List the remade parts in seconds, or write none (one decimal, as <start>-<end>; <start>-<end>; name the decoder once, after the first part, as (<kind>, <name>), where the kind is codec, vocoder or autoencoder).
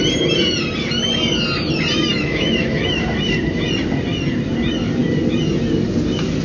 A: 2.1-3.0 (autoencoder, DAC-VAE)